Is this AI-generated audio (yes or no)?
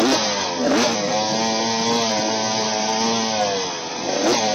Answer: no